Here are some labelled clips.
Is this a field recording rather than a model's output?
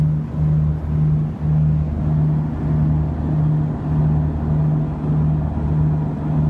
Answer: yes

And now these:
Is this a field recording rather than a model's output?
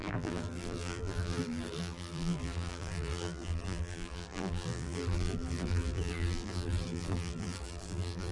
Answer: no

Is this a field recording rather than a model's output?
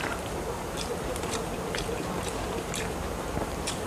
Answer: no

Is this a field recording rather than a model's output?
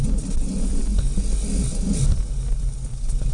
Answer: yes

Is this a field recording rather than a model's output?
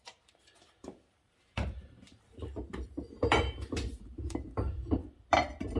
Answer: no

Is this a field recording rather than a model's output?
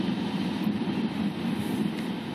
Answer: no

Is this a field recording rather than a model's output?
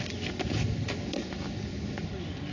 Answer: yes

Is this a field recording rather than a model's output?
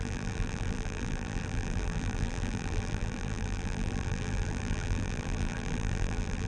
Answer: no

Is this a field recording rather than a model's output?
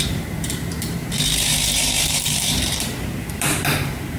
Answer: no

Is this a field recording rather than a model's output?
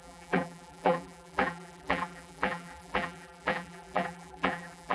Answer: no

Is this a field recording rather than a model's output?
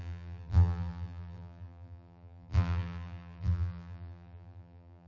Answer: no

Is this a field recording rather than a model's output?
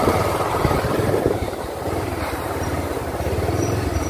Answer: no